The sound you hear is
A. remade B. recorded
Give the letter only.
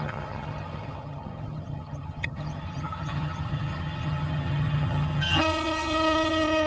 A